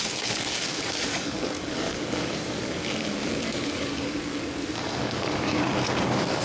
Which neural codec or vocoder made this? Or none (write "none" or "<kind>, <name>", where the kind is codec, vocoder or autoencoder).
codec, DAC